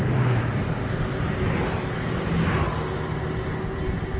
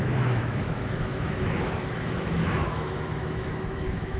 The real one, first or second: first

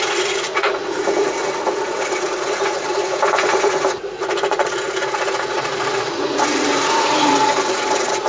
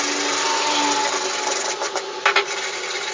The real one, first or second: second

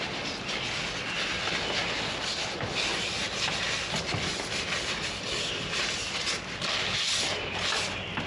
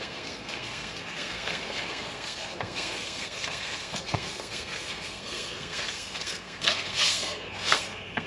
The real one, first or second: first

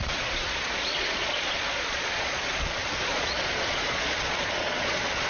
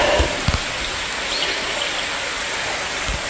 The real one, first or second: second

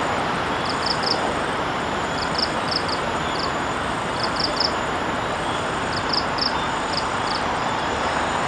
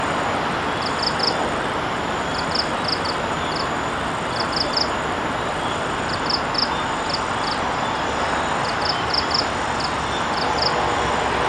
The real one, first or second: second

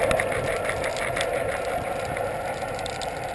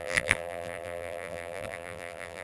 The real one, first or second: first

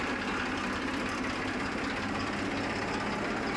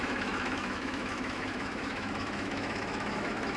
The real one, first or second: first